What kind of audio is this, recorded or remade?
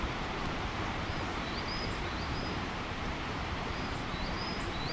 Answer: remade